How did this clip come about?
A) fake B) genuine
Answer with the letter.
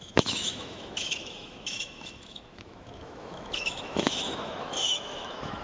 A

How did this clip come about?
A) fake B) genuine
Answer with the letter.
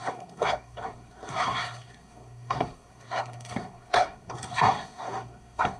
A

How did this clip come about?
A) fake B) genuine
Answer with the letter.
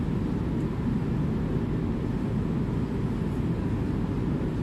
B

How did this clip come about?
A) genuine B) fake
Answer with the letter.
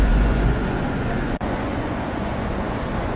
B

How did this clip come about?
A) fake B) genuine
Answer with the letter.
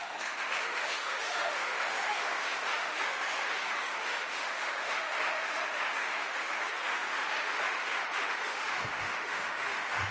A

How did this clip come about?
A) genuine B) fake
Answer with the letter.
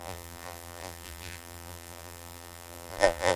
B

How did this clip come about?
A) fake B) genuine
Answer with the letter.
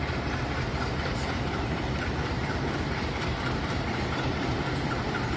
A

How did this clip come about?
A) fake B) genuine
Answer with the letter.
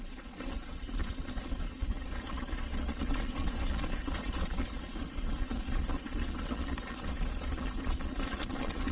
A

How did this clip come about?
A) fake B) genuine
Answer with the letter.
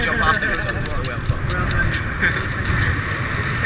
B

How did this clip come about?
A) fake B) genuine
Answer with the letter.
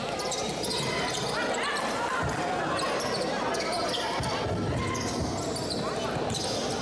B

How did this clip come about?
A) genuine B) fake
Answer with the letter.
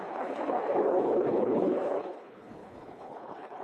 B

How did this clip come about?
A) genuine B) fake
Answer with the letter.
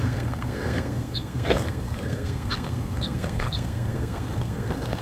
B